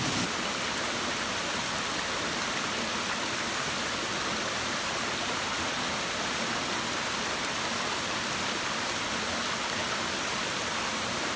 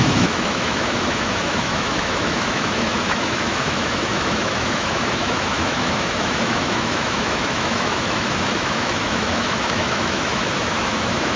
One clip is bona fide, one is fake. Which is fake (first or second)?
second